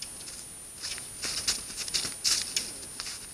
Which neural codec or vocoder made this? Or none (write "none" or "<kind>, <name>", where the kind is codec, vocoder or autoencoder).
none